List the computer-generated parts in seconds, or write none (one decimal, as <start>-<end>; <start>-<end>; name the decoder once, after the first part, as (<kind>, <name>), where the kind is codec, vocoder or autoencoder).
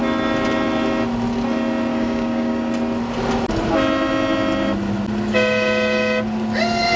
1.9-2.7 (codec, DAC)